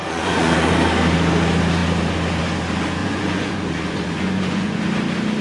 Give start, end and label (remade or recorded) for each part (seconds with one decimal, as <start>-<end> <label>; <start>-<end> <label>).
0.0-0.7 remade; 0.7-3.0 recorded; 3.0-4.8 remade; 4.8-5.4 recorded